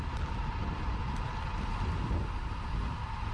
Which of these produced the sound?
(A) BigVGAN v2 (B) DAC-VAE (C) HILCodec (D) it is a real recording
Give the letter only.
D